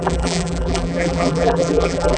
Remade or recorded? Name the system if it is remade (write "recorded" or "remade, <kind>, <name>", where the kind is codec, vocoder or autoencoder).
remade, vocoder, BigVGAN v2